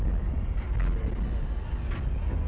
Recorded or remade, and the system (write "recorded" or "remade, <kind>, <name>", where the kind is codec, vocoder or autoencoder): recorded